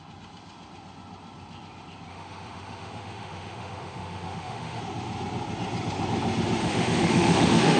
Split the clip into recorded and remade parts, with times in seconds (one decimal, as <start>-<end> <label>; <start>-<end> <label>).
0.0-2.1 recorded; 2.1-4.8 remade; 4.8-6.6 recorded; 6.6-7.8 remade